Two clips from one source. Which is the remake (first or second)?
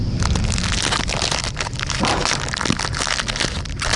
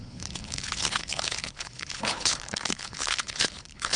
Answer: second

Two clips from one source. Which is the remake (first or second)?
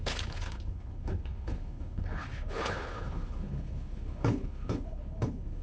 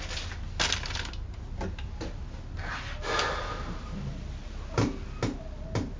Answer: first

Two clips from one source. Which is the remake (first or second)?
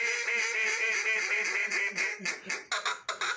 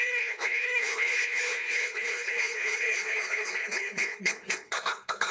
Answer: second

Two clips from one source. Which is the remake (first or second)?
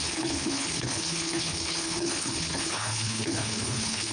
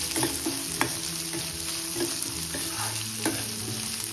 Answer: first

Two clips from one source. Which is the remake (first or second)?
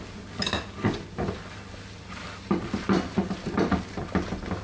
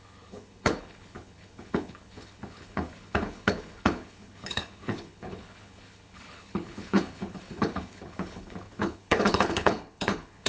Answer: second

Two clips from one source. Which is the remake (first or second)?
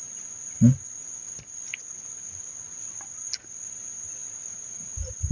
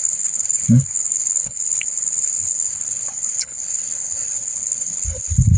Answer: second